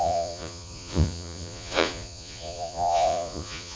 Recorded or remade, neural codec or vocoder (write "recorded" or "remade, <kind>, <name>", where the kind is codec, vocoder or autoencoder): remade, vocoder, Vocos